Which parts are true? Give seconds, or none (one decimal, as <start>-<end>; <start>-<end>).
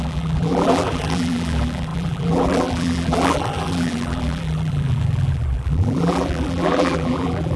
none